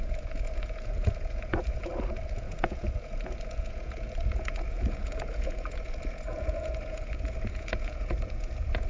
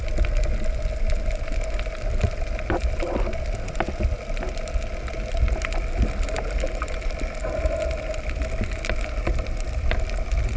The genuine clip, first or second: second